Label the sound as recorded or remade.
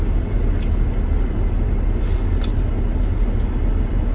recorded